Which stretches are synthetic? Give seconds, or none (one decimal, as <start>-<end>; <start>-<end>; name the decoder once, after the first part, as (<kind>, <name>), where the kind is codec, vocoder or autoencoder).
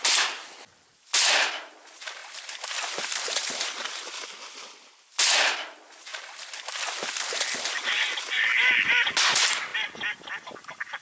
2.2-3.7 (vocoder, BigVGAN v2)